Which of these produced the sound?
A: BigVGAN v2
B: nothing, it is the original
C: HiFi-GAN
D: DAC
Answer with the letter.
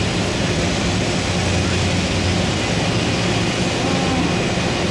B